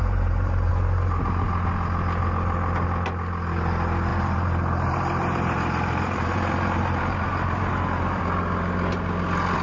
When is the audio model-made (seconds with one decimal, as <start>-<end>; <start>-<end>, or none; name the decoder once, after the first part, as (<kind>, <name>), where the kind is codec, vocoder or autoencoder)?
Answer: 0.0-0.7 (vocoder, BigVGAN v2); 4.1-8.2